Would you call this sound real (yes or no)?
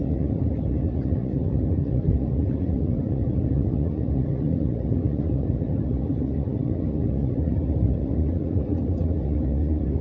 no